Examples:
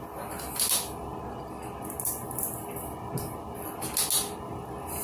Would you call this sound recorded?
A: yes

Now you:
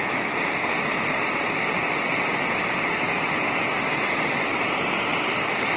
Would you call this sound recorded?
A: yes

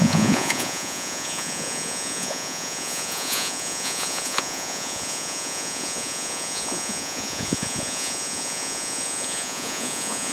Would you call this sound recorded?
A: no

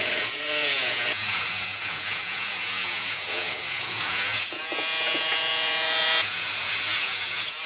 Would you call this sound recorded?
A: no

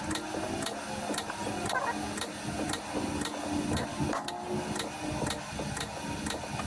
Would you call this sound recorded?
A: yes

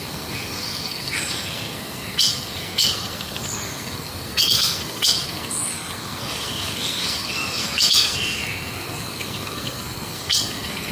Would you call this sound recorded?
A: no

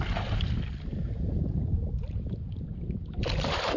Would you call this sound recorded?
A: yes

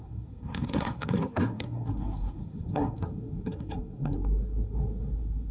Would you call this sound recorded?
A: no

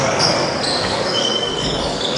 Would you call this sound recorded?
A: no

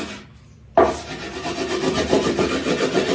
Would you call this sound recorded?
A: yes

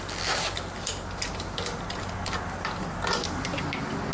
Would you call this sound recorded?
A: yes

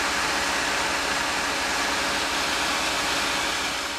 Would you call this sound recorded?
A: yes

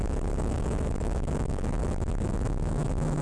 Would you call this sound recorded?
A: no